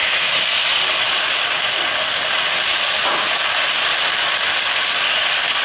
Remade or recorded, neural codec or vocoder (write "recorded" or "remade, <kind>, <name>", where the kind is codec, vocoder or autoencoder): recorded